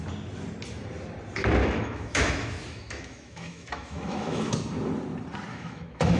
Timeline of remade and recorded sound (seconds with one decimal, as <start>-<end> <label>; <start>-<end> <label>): 0.0-1.6 recorded; 1.6-4.5 remade; 4.5-5.5 recorded; 5.5-6.2 remade